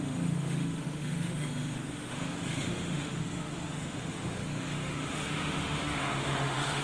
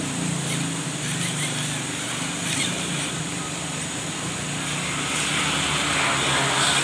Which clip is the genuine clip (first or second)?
second